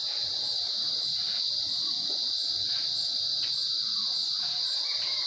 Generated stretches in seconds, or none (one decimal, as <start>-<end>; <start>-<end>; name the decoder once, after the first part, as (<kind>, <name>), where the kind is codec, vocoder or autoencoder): 0.0-3.2 (vocoder, BigVGAN v2)